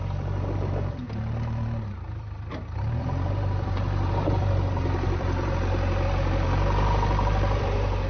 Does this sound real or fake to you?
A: fake